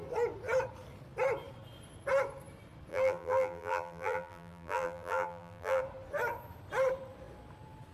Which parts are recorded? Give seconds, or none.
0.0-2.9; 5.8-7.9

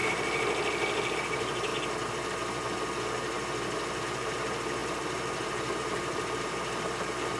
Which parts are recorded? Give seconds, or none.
0.0-1.1; 1.7-4.0

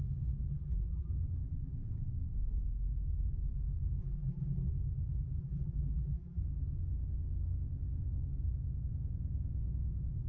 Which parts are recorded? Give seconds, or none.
0.0-0.5; 1.1-4.0; 4.7-5.4; 6.4-10.3

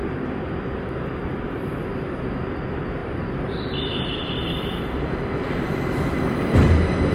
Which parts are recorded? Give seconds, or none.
0.0-1.2